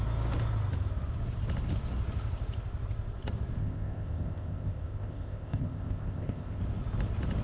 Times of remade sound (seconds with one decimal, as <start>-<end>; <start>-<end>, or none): 3.6-6.6